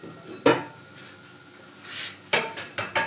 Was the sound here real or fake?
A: real